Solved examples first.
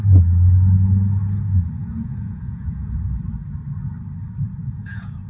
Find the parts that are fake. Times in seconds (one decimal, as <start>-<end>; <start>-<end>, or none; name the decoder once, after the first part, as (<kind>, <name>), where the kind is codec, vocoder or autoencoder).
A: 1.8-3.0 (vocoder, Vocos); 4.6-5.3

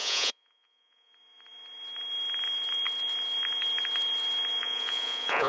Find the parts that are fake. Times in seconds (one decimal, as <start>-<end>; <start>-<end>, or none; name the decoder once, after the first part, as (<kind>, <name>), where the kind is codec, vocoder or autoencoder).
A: 0.0-1.1 (vocoder, Vocos); 4.6-5.5

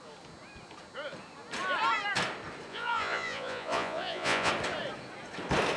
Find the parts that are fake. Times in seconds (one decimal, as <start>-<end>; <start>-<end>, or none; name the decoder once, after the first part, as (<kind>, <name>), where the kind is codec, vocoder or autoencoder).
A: 2.7-4.5 (vocoder, Vocos)